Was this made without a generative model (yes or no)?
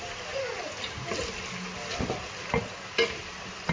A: yes